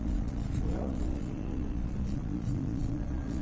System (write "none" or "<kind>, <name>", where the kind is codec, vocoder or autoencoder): vocoder, Vocos